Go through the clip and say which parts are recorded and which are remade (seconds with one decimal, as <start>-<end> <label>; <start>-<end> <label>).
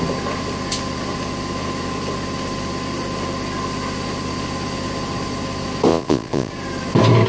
0.0-5.9 recorded; 5.9-6.5 remade; 6.5-7.3 recorded